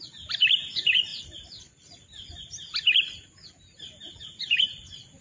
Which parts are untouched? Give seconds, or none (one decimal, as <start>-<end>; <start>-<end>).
0.0-5.2